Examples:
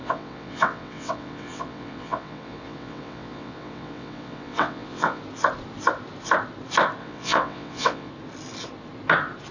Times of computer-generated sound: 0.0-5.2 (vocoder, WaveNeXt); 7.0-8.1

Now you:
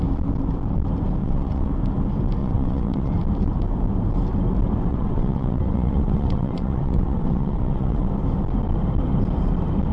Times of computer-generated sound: 1.2-1.7 (vocoder, WaveNeXt); 2.4-3.1; 4.9-8.1

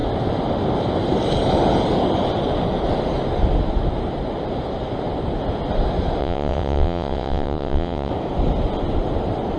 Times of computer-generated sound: 6.2-8.1 (vocoder, WaveNeXt)

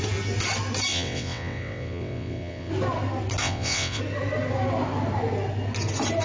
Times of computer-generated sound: 0.9-2.7 (vocoder, WaveNeXt); 3.4-4.0

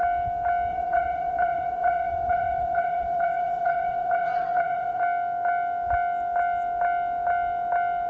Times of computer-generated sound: 0.7-5.0 (vocoder, WaveNeXt)